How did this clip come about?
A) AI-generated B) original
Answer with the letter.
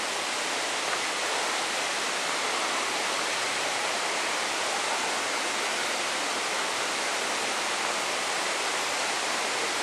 B